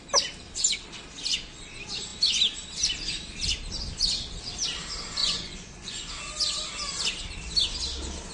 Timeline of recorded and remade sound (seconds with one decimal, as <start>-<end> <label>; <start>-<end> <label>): 0.0-5.2 recorded; 5.2-6.1 remade; 6.1-8.3 recorded